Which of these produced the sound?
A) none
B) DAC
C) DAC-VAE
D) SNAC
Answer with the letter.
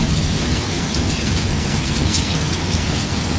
D